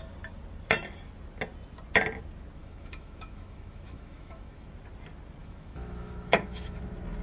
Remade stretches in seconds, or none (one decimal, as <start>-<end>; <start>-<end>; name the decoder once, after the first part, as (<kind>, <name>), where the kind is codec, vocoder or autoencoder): 2.6-4.7 (autoencoder, DAC-VAE); 5.4-6.8